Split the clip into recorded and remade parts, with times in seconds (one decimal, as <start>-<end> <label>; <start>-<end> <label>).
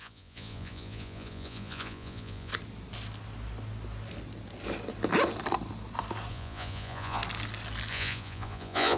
0.0-2.5 remade; 2.5-6.3 recorded; 6.3-7.2 remade; 7.2-7.9 recorded; 7.9-9.0 remade